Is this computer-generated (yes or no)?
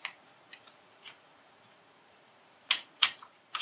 yes